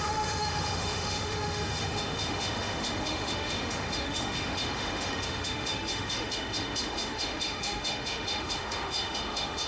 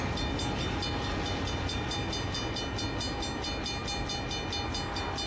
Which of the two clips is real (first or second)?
second